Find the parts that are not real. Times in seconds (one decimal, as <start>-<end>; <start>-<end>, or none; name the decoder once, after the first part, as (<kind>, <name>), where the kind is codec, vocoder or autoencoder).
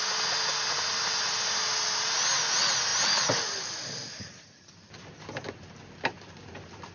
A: none